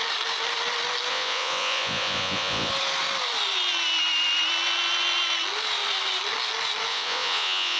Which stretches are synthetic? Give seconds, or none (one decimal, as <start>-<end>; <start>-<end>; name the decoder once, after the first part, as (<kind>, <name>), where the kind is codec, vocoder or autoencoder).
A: 1.1-2.7 (vocoder, Vocos); 6.9-7.8